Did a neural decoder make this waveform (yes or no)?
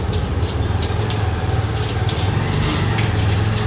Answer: no